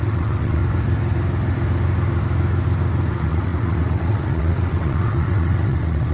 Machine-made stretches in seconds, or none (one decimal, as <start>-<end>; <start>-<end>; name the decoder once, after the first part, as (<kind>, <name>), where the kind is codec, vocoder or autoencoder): 0.0-0.6 (vocoder, WaveNeXt); 3.1-6.1